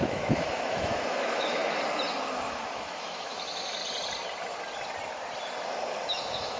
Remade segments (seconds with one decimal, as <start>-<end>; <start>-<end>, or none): 0.0-1.6; 2.2-3.8; 6.1-6.6